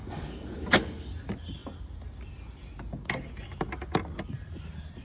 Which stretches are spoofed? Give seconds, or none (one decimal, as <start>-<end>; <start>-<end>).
0.0-1.1